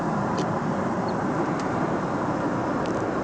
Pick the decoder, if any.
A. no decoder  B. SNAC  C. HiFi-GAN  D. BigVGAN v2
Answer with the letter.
A